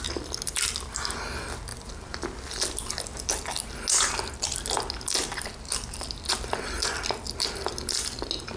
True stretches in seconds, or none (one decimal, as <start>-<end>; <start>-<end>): 0.0-1.7; 2.6-8.6

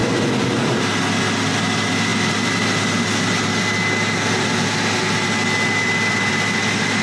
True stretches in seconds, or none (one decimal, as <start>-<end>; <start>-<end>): 0.0-7.0

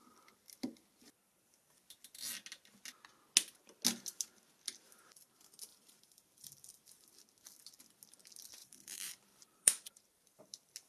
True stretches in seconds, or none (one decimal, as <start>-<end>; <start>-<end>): 0.0-5.7; 6.9-8.6; 10.4-10.9

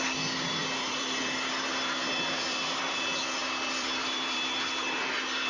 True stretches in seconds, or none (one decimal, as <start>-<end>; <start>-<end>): 0.0-0.6; 3.0-3.4; 4.7-5.5

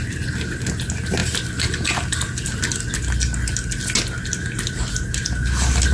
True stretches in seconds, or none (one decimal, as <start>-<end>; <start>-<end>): 0.0-5.9

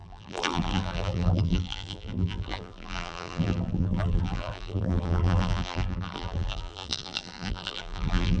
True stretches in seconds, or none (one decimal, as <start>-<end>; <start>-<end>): none